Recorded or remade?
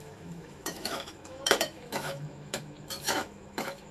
remade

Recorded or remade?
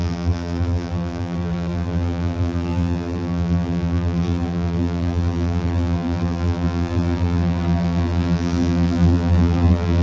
remade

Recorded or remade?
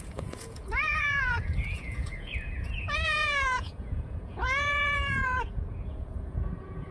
remade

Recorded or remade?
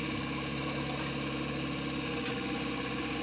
recorded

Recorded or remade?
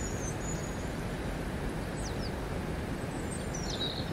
recorded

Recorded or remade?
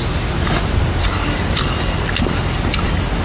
recorded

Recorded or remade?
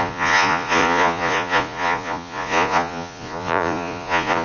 remade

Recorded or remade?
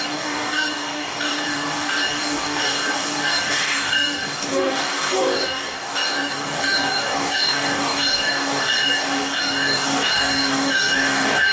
remade